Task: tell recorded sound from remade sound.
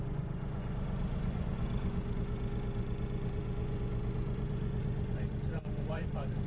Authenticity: remade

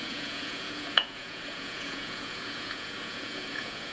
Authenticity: remade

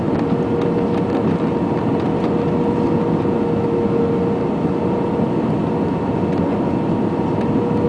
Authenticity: recorded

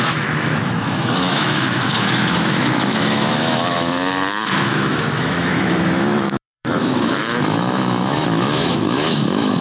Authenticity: remade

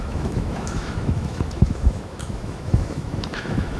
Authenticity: remade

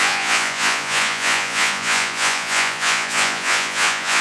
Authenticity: remade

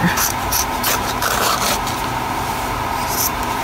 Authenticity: remade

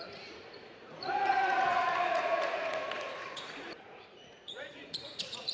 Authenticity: remade